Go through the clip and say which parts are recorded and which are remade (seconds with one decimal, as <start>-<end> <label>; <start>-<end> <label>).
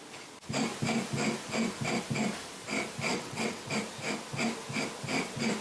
0.0-3.1 recorded; 3.1-3.7 remade; 3.7-5.6 recorded